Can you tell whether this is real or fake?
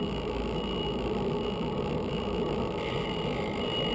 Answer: real